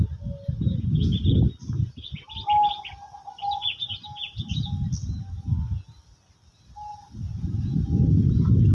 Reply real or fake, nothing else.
real